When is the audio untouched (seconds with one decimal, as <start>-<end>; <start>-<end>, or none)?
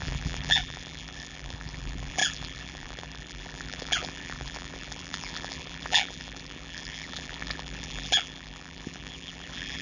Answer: none